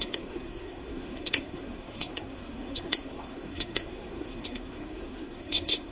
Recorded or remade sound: remade